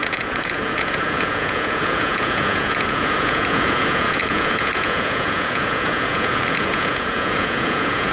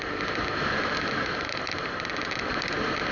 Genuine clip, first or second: second